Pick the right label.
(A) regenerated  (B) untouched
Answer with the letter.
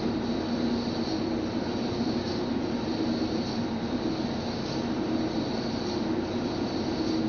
B